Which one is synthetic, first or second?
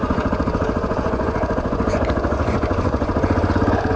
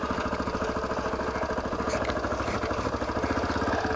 first